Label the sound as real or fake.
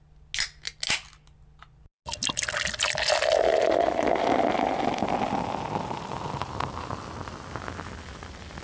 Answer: real